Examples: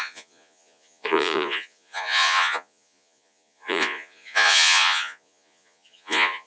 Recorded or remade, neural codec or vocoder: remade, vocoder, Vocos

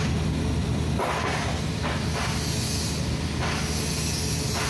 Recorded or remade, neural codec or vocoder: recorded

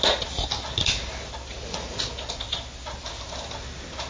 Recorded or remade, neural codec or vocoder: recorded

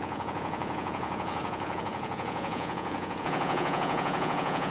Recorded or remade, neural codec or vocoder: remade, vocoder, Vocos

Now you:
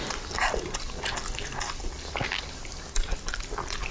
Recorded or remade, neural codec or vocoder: recorded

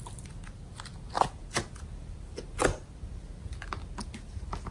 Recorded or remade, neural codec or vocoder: recorded